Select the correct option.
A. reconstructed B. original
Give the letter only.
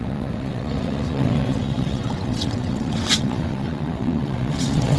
A